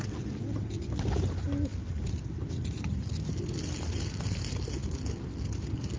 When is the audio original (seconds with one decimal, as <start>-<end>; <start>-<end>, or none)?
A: 0.0-6.0